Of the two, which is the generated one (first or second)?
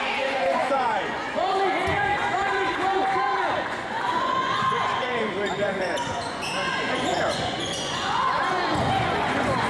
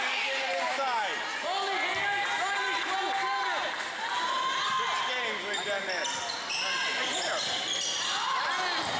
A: first